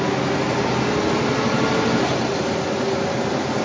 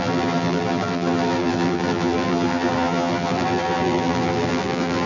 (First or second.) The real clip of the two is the first